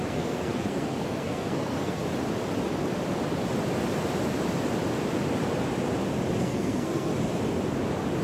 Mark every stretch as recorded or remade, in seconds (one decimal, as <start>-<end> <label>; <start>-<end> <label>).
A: 0.0-2.0 remade; 2.0-6.4 recorded; 6.4-7.1 remade; 7.1-8.2 recorded